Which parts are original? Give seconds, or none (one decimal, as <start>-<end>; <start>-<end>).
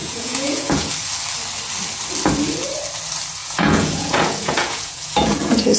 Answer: 0.9-3.4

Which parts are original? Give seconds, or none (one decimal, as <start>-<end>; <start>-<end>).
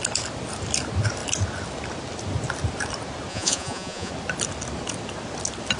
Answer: 0.0-3.3; 4.1-5.8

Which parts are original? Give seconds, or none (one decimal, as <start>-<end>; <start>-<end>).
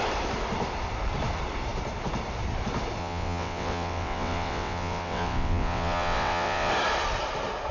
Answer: 0.0-3.0; 6.7-7.7